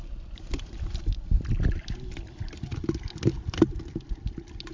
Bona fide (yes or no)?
yes